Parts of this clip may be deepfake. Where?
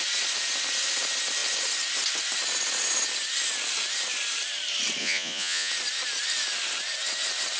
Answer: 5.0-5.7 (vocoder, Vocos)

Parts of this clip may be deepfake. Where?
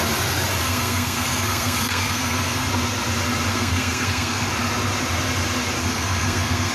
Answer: 0.6-2.7 (codec, SNAC); 3.5-4.5; 5.8-6.7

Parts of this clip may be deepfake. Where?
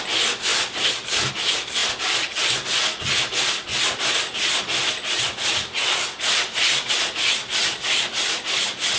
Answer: 0.5-1.3 (vocoder, BigVGAN v2)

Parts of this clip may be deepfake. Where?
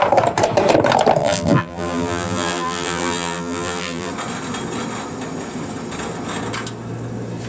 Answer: 1.2-4.1 (vocoder, BigVGAN v2)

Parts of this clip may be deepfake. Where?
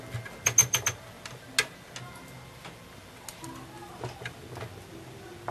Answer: 3.8-4.4 (vocoder, BigVGAN v2)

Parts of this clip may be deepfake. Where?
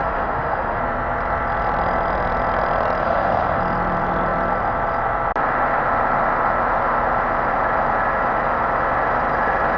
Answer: 0.0-0.8 (autoencoder, DAC-VAE); 3.0-3.6